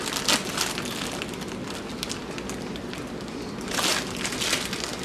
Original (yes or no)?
yes